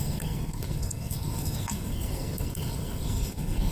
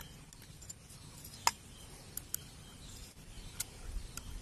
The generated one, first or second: first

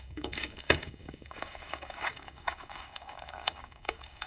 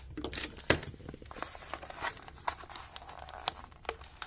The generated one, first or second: first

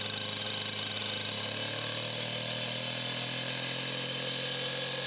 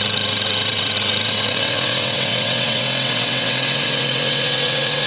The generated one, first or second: second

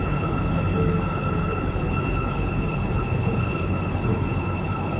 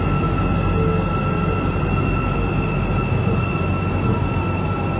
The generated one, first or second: first